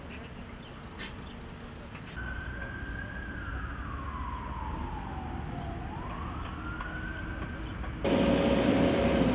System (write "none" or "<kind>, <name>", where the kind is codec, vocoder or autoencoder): none